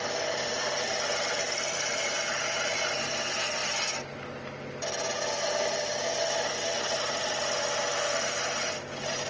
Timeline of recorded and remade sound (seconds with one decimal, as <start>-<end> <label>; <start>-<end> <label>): 0.0-9.3 recorded